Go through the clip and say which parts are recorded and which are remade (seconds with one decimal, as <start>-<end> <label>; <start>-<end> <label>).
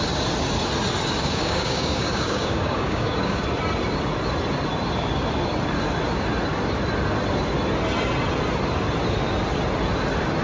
0.0-1.2 recorded; 1.2-3.4 remade; 3.4-10.4 recorded